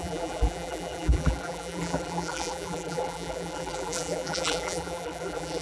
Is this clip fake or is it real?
fake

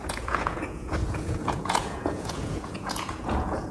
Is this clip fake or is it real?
fake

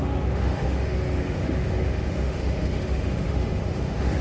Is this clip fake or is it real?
fake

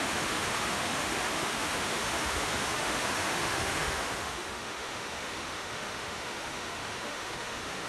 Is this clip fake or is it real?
fake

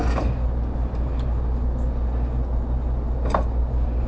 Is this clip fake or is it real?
real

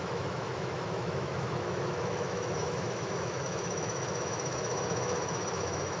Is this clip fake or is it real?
fake